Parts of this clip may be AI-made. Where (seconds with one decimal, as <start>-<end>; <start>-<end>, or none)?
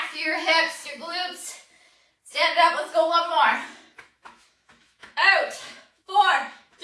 0.0-0.8; 4.0-6.8